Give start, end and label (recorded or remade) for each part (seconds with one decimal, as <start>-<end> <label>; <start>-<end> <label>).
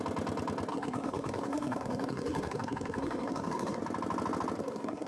0.0-0.7 recorded; 0.7-3.8 remade; 3.8-4.6 recorded; 4.6-5.1 remade